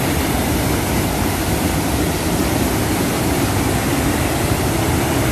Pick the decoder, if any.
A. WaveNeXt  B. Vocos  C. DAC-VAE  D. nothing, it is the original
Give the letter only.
D